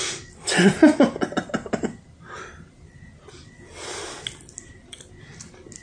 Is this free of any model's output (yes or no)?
yes